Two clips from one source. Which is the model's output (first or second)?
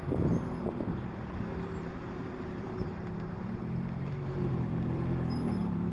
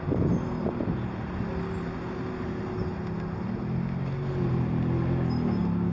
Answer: first